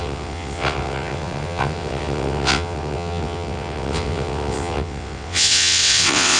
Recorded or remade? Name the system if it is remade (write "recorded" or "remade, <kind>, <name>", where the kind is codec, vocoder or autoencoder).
remade, vocoder, WaveNeXt